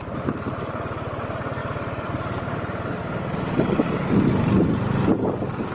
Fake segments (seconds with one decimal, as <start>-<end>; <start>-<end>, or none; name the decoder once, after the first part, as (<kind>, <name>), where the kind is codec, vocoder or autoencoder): 1.6-4.3 (vocoder, BigVGAN v2)